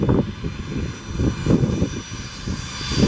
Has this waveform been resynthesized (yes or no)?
no